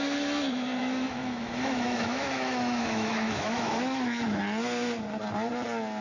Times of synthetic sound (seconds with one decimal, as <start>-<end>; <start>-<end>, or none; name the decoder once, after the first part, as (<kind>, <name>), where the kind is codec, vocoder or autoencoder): 0.8-4.4 (autoencoder, DAC-VAE)